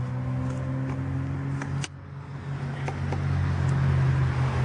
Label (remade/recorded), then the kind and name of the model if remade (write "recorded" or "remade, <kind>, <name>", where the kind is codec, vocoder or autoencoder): recorded